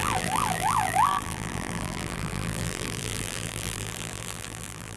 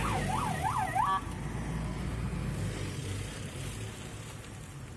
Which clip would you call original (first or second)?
second